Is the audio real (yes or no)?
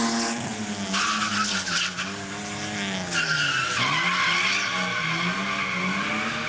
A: yes